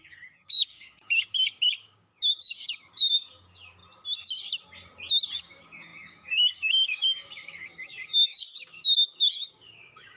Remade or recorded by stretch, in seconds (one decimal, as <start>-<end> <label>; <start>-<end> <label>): 0.0-3.8 remade; 3.8-5.4 recorded; 5.4-10.2 remade